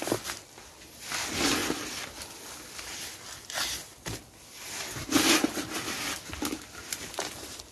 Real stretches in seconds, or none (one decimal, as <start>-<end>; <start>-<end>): 0.0-7.7